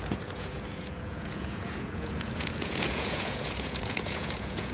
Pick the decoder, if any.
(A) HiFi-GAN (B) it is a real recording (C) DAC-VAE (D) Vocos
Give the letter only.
D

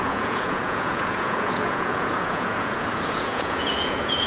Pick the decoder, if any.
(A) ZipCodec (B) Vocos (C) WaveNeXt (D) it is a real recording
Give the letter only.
B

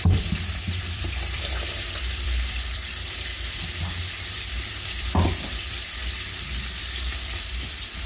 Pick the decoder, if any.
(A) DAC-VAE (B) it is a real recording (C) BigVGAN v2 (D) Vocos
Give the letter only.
C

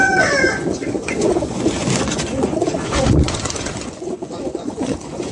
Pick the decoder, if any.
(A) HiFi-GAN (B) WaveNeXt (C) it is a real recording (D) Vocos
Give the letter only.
D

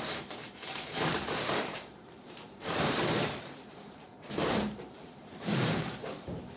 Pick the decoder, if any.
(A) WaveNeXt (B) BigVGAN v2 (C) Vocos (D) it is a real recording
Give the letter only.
B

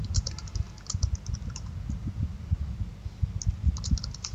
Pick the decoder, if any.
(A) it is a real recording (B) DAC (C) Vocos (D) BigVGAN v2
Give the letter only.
A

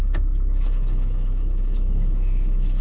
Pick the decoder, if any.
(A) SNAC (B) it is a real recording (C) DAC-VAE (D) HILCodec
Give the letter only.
C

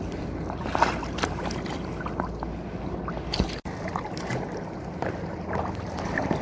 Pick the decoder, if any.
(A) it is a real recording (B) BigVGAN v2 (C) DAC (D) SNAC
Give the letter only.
A